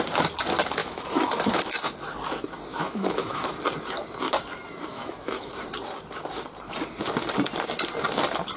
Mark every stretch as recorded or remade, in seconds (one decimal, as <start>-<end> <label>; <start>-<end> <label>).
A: 0.0-0.8 recorded; 0.8-1.7 remade; 1.7-2.7 recorded; 2.7-3.5 remade; 3.5-4.9 recorded; 4.9-5.6 remade; 5.6-8.6 recorded